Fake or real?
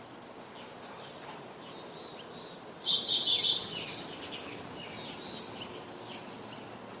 real